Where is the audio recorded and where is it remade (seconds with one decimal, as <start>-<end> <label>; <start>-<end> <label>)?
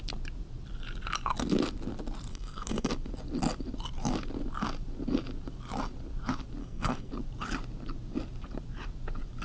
0.0-2.3 recorded; 2.3-2.9 remade; 2.9-6.6 recorded; 6.6-7.1 remade; 7.1-9.4 recorded